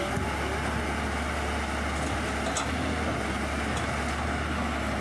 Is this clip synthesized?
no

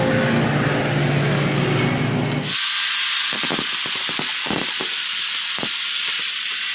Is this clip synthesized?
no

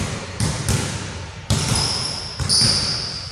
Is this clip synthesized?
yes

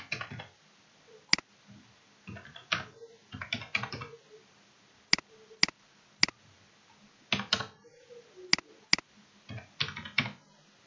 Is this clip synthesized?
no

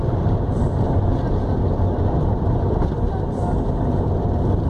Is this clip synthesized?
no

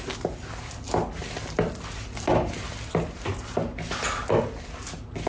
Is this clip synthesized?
no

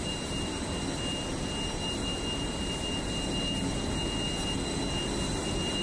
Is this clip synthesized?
no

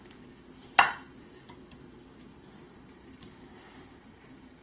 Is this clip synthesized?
yes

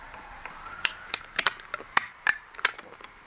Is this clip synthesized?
yes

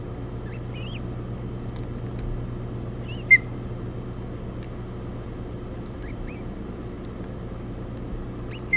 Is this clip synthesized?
no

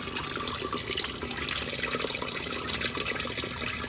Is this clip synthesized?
no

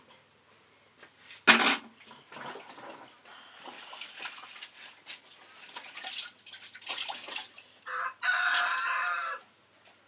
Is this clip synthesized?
no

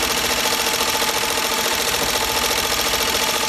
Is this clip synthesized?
yes